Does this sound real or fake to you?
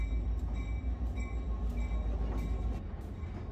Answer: real